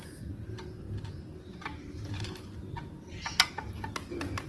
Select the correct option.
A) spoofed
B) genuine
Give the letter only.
B